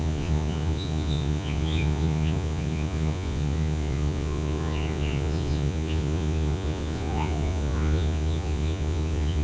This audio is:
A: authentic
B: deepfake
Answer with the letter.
B